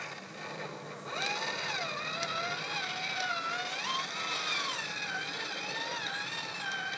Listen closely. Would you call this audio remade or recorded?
recorded